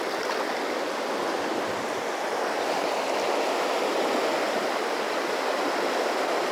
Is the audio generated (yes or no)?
no